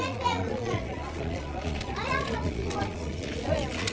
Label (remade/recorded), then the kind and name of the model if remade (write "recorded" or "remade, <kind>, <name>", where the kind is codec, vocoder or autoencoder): remade, vocoder, Vocos